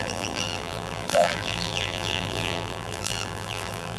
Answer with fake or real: fake